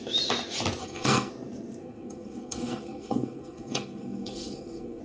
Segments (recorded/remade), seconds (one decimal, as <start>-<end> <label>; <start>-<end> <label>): 0.0-0.8 recorded; 0.8-1.3 remade; 1.3-1.8 recorded; 1.8-5.0 remade

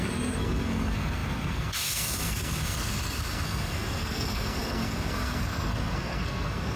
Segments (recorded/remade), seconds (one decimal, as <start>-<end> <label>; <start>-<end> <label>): 0.0-6.8 remade

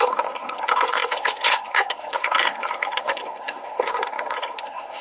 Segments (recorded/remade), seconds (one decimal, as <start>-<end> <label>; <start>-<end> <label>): 0.0-5.0 remade

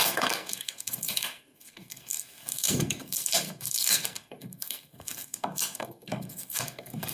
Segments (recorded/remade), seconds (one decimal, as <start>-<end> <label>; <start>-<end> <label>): 0.0-7.1 remade

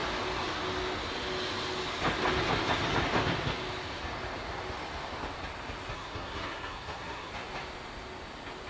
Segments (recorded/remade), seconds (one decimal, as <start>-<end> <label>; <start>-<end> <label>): 0.0-5.9 recorded; 5.9-7.3 remade; 7.3-8.7 recorded

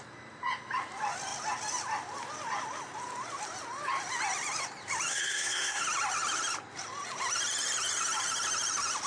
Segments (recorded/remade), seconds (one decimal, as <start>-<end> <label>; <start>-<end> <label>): 0.0-5.1 recorded; 5.1-5.8 remade; 5.8-9.1 recorded

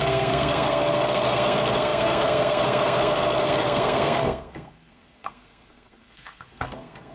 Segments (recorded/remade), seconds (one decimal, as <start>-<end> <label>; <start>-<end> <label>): 0.0-7.1 remade

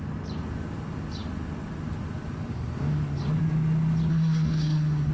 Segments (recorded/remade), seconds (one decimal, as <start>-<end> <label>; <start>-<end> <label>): 0.0-4.1 recorded; 4.1-5.1 remade